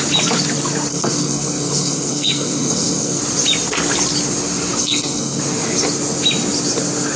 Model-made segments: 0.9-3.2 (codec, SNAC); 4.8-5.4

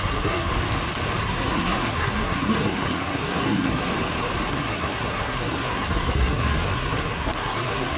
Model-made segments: 0.0-0.5 (codec, SNAC); 1.2-3.9; 4.5-8.0